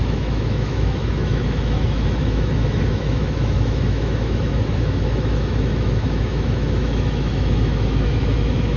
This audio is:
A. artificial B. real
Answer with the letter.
A